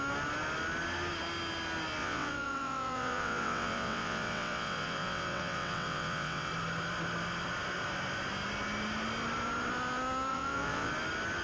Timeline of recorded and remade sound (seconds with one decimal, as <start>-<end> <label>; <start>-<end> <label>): 0.0-2.0 recorded; 2.0-6.5 remade; 6.5-10.3 recorded; 10.3-10.9 remade; 10.9-11.4 recorded